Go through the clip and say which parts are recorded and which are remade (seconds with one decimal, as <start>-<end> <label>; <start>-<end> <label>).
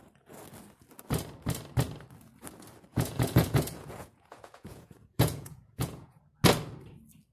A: 0.0-2.9 recorded; 2.9-6.2 remade; 6.2-7.3 recorded